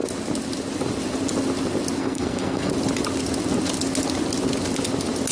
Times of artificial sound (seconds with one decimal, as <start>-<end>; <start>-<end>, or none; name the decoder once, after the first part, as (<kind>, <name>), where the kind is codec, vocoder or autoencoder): 2.0-2.7 (codec, SNAC)